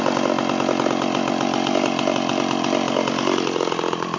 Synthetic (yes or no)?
no